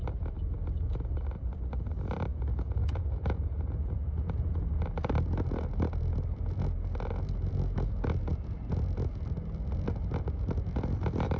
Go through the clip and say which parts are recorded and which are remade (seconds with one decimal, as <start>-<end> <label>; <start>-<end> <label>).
0.0-2.3 recorded; 2.3-4.7 remade; 4.7-11.4 recorded